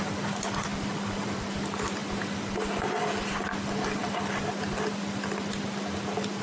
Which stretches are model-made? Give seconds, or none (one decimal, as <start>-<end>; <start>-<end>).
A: none